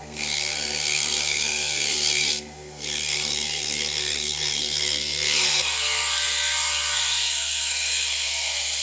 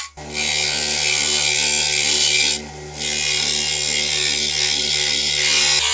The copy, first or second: first